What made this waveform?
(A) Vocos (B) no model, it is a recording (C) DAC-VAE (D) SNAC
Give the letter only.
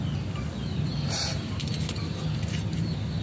B